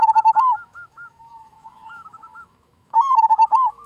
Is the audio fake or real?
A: fake